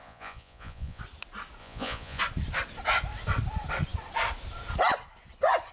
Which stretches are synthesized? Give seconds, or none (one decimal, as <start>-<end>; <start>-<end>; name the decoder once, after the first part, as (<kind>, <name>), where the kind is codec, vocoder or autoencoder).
0.0-1.0 (vocoder, Vocos); 1.6-2.2